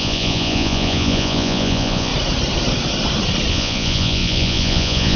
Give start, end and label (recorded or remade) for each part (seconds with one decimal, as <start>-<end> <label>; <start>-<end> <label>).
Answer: 0.0-2.1 remade; 2.1-3.5 recorded; 3.5-5.2 remade